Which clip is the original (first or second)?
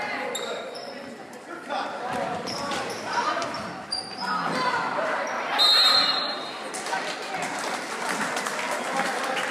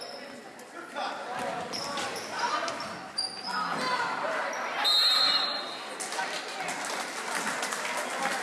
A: second